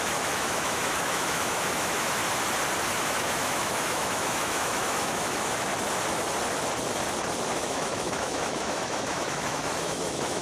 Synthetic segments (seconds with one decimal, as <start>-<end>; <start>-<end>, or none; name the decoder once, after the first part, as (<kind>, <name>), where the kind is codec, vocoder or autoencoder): 0.0-2.2 (autoencoder, DAC-VAE); 3.0-5.7; 7.5-10.4